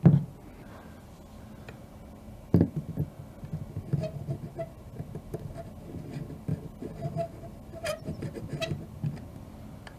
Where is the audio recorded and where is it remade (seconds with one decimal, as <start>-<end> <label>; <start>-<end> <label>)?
0.0-10.0 recorded